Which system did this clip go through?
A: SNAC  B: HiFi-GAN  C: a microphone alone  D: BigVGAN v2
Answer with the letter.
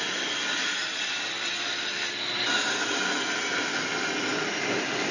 C